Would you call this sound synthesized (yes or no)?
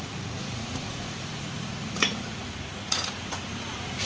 yes